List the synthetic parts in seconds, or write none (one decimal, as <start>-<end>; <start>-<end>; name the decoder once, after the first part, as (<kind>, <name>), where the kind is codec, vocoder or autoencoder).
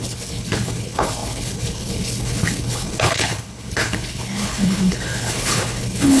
0.0-6.2 (codec, HILCodec)